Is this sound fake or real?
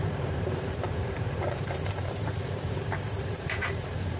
fake